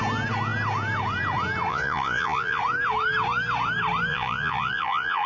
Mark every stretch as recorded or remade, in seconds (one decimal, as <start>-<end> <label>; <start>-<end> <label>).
0.0-1.7 recorded; 1.7-2.6 remade; 2.6-4.1 recorded; 4.1-5.3 remade